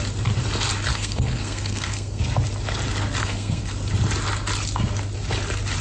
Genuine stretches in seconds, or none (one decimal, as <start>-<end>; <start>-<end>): 0.0-0.9; 2.2-3.2; 3.7-5.8